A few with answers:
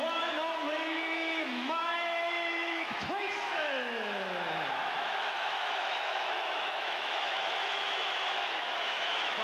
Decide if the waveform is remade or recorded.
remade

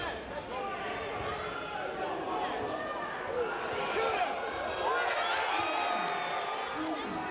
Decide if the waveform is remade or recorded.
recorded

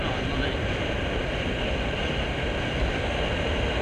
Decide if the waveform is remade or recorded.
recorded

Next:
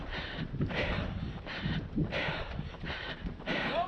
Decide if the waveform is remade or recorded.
remade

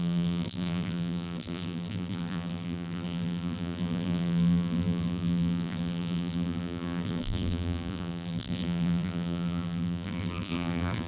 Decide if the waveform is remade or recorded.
remade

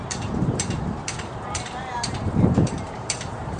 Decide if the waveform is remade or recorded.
remade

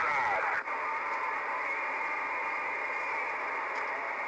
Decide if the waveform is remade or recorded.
recorded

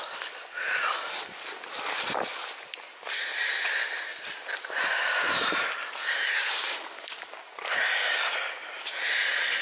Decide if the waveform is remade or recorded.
recorded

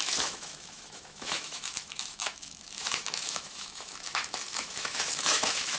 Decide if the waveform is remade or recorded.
remade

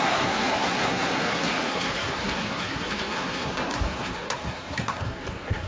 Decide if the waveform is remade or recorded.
remade